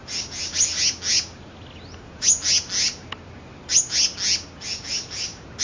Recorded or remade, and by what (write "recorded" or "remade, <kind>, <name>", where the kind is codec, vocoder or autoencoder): recorded